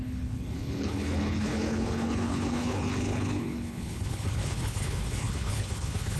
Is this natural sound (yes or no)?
no